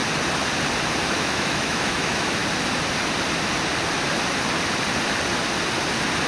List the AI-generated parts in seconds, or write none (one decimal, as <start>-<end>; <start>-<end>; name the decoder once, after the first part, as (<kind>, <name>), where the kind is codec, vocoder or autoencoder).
1.1-2.4 (autoencoder, DAC-VAE)